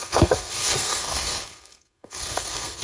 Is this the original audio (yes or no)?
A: no